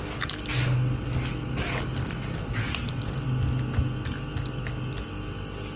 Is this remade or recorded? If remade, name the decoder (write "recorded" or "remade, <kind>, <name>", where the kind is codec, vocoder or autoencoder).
recorded